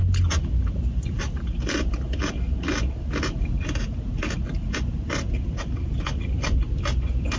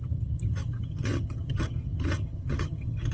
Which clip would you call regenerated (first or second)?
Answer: second